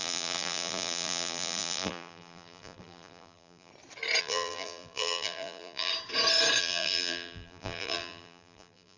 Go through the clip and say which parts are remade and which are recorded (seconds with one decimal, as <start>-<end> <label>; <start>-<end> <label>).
0.0-3.7 remade; 3.7-4.2 recorded; 4.2-5.9 remade; 5.9-6.6 recorded; 6.6-9.0 remade

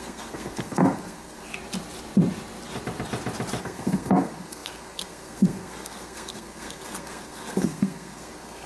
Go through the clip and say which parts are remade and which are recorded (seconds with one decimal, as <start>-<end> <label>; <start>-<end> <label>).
0.0-1.5 remade; 1.5-3.6 recorded; 3.6-8.7 remade

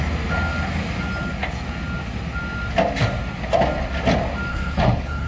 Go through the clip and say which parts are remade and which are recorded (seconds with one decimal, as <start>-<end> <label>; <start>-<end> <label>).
0.0-4.5 recorded; 4.5-5.3 remade

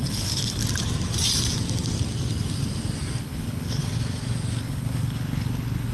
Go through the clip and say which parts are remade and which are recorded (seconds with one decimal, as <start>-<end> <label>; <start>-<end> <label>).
0.0-0.6 remade; 0.6-3.2 recorded; 3.2-3.8 remade; 3.8-4.6 recorded; 4.6-5.9 remade

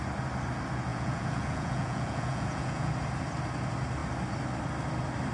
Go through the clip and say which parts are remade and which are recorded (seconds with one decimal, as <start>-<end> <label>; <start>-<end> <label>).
0.0-0.9 recorded; 0.9-2.9 remade; 2.9-5.3 recorded

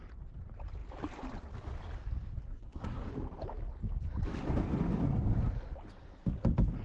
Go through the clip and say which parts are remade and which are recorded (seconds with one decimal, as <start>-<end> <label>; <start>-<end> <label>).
0.0-2.5 recorded; 2.5-3.1 remade; 3.1-6.8 recorded